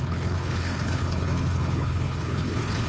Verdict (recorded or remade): remade